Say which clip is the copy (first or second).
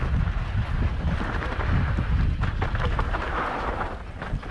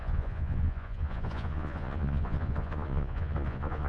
second